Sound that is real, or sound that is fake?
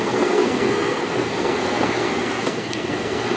fake